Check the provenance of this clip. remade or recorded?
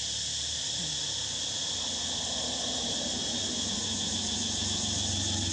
recorded